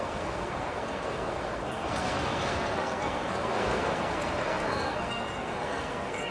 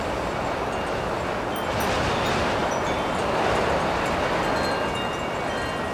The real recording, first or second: second